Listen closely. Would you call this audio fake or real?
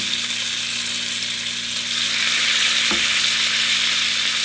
real